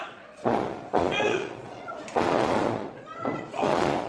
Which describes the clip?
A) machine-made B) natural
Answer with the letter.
A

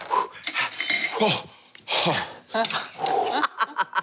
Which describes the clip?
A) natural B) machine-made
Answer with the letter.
A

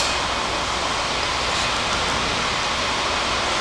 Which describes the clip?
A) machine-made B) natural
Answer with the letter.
B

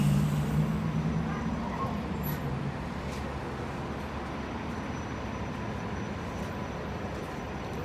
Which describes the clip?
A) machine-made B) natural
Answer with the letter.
B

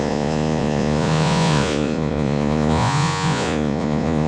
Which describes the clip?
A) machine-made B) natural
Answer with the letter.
A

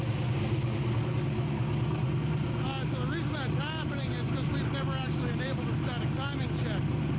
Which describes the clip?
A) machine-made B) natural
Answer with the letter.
B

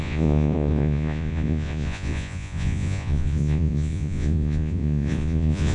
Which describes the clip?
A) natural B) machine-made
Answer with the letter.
B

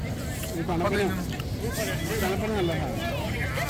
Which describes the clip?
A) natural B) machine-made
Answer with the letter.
A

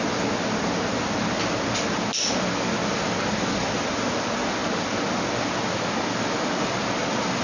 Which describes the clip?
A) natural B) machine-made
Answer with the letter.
A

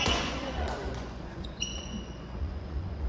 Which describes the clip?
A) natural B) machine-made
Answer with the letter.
B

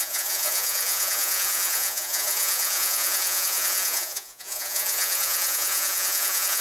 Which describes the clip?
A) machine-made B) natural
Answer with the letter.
A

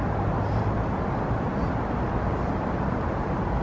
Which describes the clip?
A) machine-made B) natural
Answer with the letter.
B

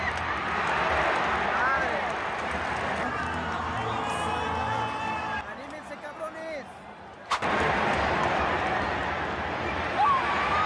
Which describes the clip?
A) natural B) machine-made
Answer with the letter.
A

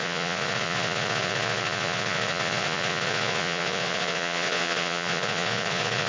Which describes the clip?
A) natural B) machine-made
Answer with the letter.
B